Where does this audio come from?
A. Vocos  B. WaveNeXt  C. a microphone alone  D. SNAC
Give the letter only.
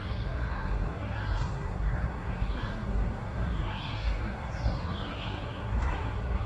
D